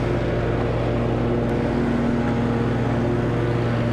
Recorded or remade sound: recorded